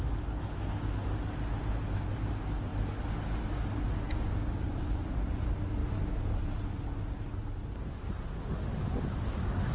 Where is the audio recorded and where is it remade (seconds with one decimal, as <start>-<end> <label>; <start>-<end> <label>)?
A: 0.0-4.1 recorded; 4.1-4.7 remade; 4.7-9.7 recorded